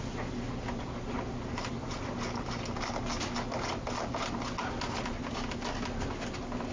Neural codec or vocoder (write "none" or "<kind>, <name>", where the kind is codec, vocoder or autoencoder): none